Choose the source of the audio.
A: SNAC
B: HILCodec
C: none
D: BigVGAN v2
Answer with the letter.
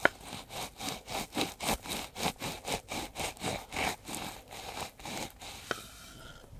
C